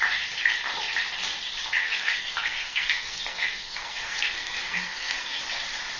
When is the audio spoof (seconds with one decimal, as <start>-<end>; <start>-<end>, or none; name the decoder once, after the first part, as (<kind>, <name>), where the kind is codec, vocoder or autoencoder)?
1.8-5.4 (codec, SNAC)